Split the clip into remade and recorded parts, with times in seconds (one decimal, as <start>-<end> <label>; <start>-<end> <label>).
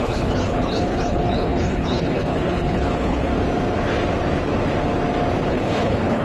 0.0-3.3 remade; 3.3-5.5 recorded; 5.5-6.2 remade